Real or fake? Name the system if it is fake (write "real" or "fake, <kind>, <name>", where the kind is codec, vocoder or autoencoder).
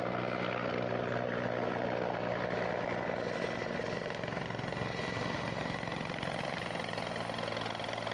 real